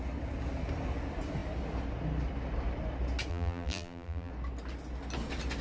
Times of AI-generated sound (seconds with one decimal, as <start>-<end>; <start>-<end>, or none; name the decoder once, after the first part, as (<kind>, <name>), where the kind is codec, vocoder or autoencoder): 3.3-4.3 (vocoder, BigVGAN v2)